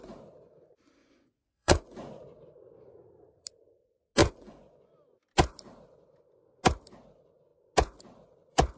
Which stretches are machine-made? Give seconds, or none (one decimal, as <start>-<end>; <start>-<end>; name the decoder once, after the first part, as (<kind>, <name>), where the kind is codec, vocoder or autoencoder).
1.0-2.2 (vocoder, Vocos); 4.2-4.9